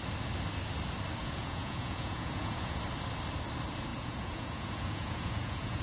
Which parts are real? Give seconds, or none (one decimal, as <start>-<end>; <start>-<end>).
0.0-1.2; 2.8-3.9